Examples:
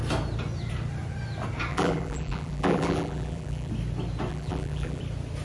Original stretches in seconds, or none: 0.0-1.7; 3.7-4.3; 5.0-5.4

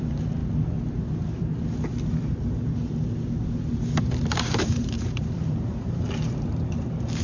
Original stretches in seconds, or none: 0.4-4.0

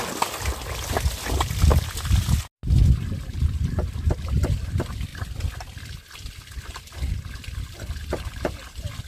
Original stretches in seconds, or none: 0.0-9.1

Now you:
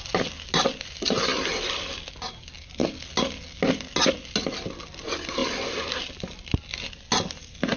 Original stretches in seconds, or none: 0.0-1.3; 1.9-5.4; 6.7-7.8